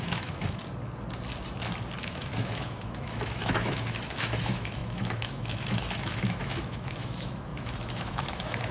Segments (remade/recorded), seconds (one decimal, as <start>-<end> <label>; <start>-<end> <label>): 0.0-0.6 remade; 0.6-2.0 recorded; 2.0-8.7 remade

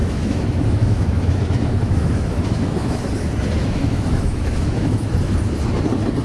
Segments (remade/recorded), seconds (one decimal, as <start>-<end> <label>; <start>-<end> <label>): 0.0-3.1 remade; 3.1-3.6 recorded; 3.6-5.1 remade; 5.1-6.2 recorded

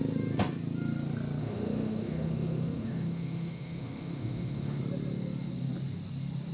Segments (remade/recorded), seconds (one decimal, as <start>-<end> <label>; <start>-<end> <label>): 0.0-1.4 recorded; 1.4-4.8 remade; 4.8-6.5 recorded

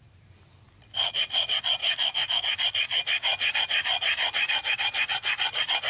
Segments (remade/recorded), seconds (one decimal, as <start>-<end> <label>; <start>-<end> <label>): 0.0-1.8 recorded; 1.8-2.4 remade; 2.4-5.9 recorded

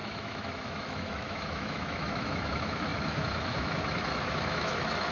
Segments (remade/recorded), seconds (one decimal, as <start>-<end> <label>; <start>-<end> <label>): 0.0-5.1 remade

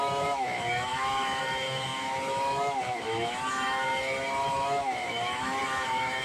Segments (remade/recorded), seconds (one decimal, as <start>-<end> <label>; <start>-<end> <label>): 0.0-6.2 remade

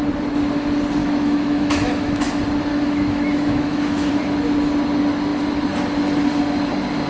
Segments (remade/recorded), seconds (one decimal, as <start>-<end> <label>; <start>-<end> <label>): 0.0-1.0 recorded; 1.0-2.3 remade; 2.3-2.7 recorded; 2.7-4.1 remade; 4.1-7.1 recorded